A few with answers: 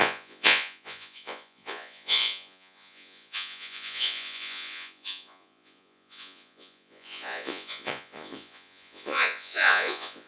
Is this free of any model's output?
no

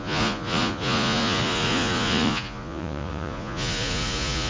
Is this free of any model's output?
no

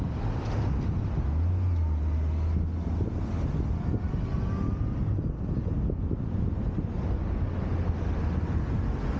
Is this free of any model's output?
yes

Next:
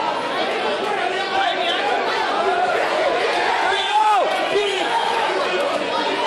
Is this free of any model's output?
no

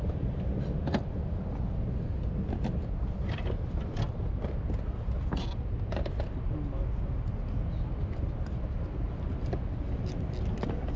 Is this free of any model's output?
yes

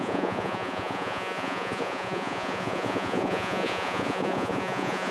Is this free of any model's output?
no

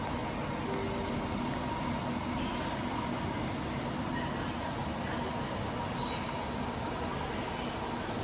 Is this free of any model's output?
yes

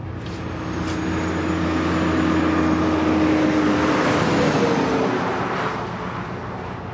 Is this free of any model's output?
yes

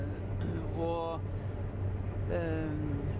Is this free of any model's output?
yes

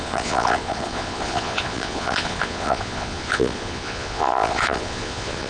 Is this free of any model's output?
no